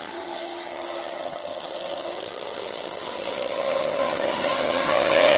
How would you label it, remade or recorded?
remade